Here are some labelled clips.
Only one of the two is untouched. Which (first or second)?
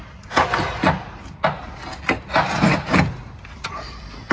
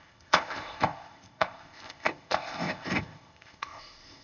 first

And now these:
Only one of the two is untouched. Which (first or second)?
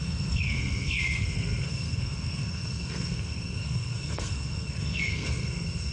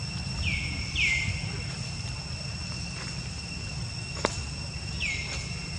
second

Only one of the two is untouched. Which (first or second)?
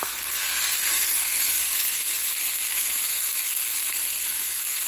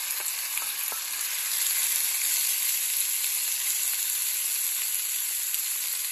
second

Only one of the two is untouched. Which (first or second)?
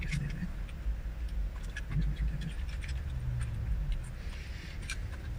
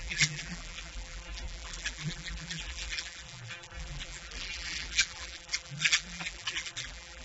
first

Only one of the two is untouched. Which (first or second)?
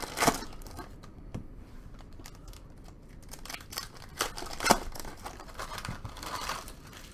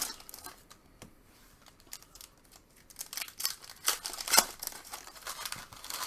second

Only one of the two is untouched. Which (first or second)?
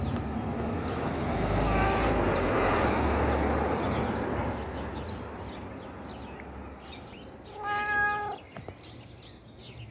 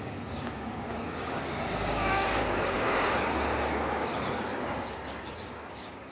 first